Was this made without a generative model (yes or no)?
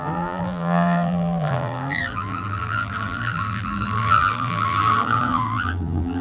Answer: no